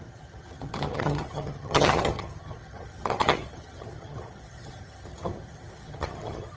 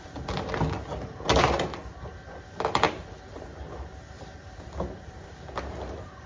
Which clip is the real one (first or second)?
second